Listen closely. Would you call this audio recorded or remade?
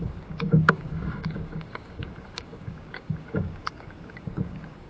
remade